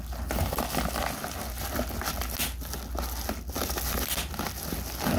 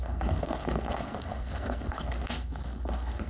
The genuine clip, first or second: first